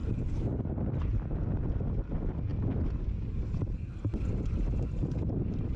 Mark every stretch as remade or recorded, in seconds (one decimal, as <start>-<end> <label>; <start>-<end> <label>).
0.0-5.8 recorded